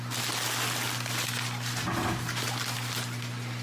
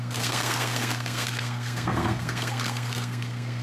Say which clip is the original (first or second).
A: first